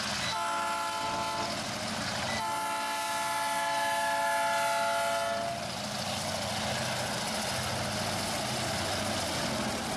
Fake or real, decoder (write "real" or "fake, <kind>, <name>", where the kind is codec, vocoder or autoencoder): real